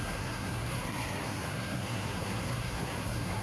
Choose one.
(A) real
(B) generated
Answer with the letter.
B